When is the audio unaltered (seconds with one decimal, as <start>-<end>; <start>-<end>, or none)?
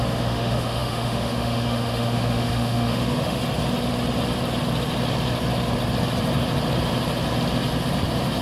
3.4-8.4